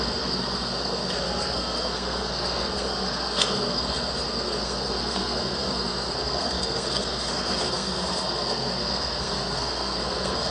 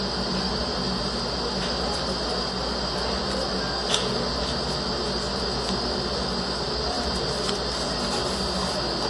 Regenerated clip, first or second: first